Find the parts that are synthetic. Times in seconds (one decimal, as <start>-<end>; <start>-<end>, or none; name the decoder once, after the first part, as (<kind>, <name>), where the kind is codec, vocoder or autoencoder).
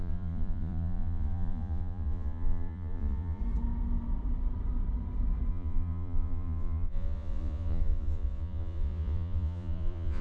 0.0-3.4 (vocoder, Vocos); 5.5-10.2